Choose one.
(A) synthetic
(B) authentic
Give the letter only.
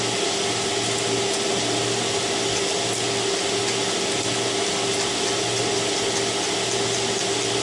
B